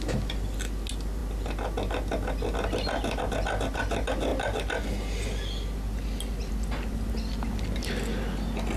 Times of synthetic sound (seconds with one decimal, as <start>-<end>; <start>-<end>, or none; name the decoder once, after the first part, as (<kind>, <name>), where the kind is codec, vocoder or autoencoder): none